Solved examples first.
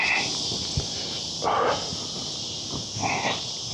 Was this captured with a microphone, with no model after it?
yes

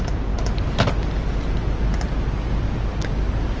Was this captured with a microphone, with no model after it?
yes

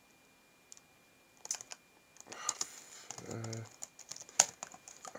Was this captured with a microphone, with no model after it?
yes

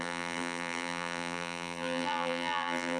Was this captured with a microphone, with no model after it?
no